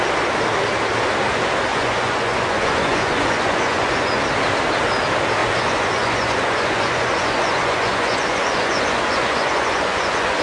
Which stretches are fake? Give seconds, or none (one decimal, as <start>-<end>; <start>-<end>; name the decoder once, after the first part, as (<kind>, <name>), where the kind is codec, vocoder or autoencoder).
1.7-4.2 (vocoder, Vocos); 5.4-10.4